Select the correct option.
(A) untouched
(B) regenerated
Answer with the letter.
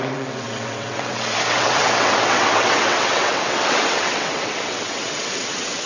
B